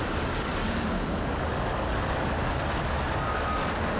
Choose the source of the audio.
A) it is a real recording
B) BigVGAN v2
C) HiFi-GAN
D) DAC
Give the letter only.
D